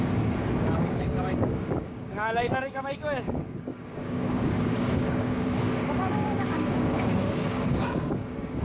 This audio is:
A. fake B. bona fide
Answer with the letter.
A